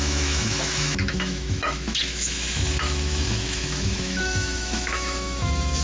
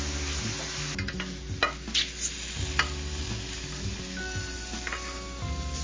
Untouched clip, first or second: second